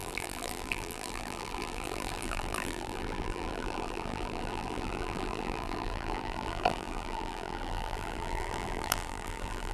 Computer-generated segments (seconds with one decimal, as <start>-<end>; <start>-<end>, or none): 0.0-9.7

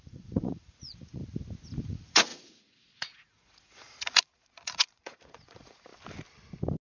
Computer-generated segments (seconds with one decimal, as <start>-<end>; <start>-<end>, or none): 0.0-1.2; 1.8-5.9